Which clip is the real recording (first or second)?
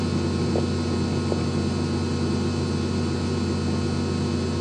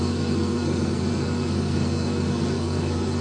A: first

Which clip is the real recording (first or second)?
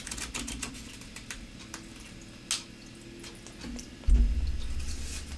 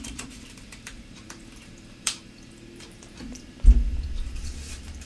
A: first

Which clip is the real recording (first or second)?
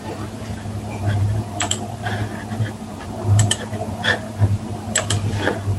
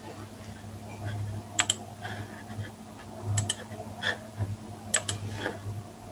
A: second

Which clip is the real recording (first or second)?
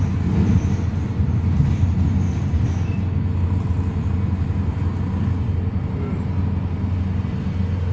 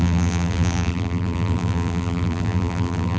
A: first